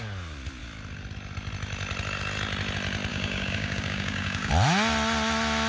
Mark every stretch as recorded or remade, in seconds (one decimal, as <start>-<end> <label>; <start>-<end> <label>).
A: 0.0-3.1 recorded; 3.1-4.5 remade; 4.5-5.7 recorded